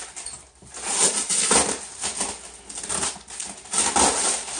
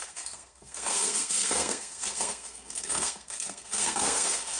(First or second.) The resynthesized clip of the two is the second